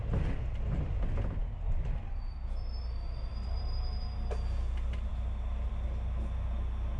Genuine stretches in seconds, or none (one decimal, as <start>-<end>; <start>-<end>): 0.0-7.0